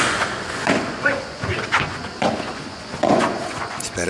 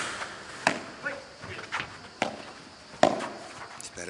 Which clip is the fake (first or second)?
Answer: first